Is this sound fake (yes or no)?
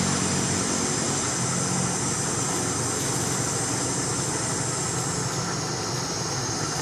no